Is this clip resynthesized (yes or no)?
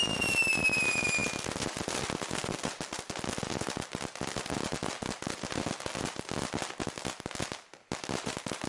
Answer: no